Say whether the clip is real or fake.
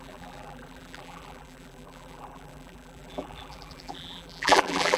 fake